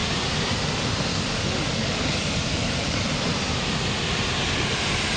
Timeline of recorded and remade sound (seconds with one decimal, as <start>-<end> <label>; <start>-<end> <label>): 0.0-1.1 recorded; 1.1-3.0 remade; 3.0-5.2 recorded